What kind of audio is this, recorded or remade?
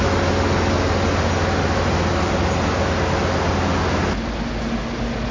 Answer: recorded